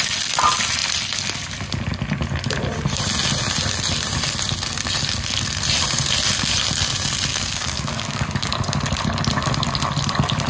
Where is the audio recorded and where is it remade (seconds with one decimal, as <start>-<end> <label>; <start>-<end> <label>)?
0.0-7.3 recorded; 7.3-8.5 remade; 8.5-10.5 recorded